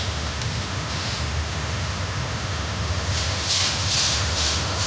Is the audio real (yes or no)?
no